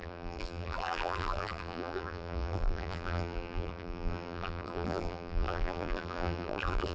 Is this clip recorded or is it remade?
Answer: remade